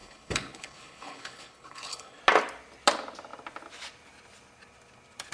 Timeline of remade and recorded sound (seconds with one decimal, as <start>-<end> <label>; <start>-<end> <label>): 0.0-2.2 remade; 2.2-5.3 recorded